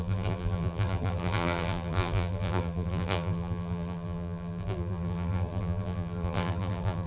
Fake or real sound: fake